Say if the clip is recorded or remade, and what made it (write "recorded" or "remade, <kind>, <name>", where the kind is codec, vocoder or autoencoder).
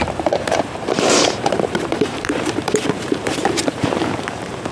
remade, vocoder, BigVGAN v2